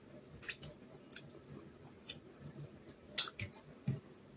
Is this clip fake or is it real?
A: real